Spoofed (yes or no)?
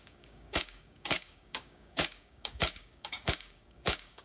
yes